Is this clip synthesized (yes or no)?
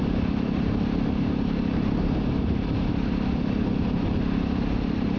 yes